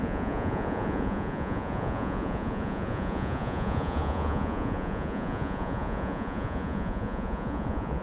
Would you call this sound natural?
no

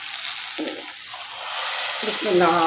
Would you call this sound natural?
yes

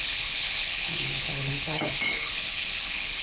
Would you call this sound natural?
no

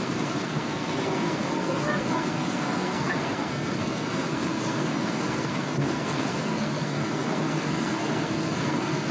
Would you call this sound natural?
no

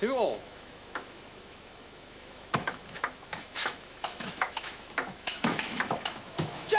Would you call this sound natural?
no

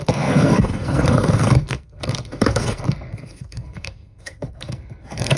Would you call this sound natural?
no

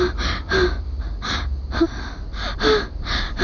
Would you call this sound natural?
yes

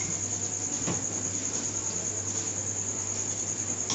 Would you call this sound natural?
yes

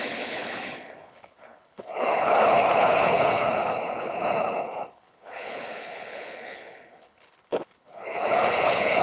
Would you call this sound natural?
no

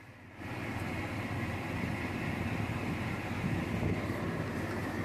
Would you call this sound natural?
yes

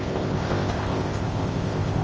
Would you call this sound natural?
no